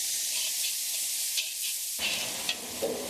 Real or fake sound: real